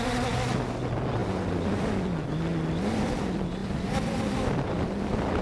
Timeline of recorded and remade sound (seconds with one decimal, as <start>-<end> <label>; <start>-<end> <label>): 0.0-5.4 recorded